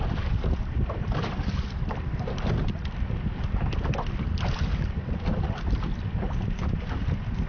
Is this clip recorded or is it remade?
remade